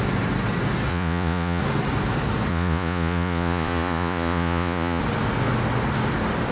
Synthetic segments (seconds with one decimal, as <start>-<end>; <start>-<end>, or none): 0.9-1.6; 2.5-5.0